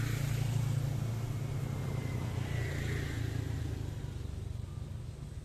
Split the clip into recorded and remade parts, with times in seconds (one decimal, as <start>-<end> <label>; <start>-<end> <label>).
0.0-5.4 recorded